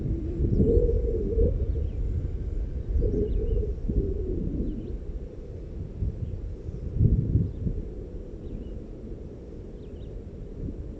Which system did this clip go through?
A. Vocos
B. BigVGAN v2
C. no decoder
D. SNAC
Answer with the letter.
C